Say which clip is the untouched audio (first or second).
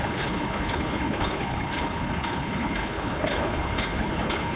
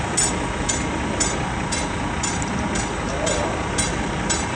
second